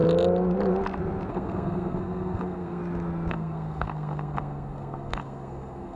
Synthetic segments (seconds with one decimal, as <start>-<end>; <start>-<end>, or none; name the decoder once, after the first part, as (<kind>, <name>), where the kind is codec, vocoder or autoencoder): 1.3-2.8 (codec, SNAC); 3.3-6.0